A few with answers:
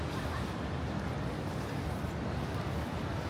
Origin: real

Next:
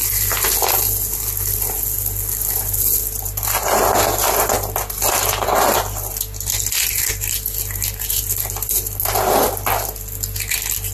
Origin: real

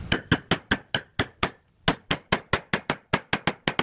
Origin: real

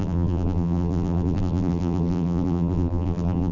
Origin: fake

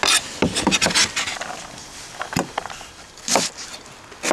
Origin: real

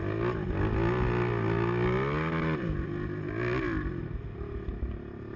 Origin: real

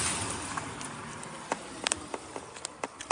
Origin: real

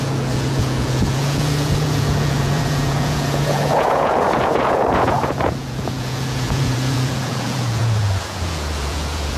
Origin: fake